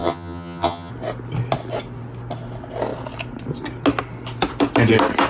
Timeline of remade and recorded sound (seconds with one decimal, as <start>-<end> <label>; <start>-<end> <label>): 0.0-0.9 remade; 0.9-5.3 recorded